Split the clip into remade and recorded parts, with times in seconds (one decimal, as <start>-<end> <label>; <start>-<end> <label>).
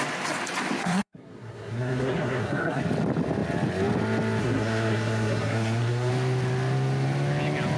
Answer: 0.0-0.8 recorded; 0.8-2.8 remade; 2.8-4.4 recorded; 4.4-6.1 remade; 6.1-7.8 recorded